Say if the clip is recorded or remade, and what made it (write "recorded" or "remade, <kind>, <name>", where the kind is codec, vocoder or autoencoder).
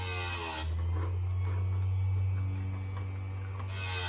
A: recorded